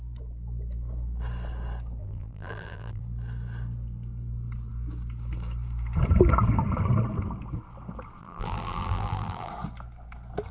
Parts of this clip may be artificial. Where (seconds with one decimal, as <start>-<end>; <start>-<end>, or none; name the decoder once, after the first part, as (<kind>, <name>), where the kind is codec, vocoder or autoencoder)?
2.0-3.0 (vocoder, BigVGAN v2); 8.2-9.5